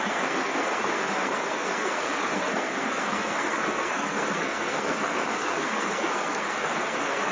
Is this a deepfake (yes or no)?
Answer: yes